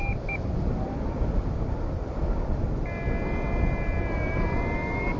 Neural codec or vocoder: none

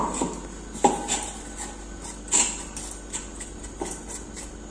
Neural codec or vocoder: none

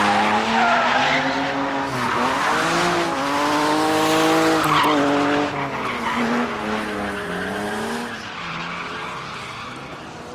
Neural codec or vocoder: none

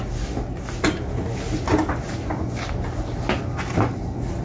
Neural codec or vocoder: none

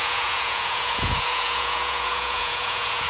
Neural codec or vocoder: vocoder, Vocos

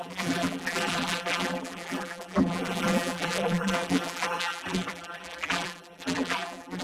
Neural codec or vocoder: vocoder, BigVGAN v2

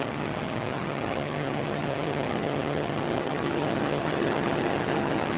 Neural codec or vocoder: vocoder, HiFi-GAN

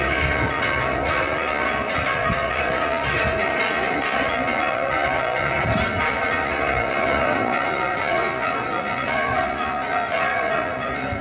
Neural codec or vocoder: vocoder, Vocos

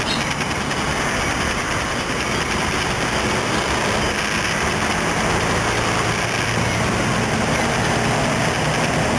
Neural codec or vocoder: none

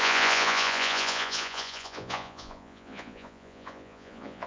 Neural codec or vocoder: vocoder, Vocos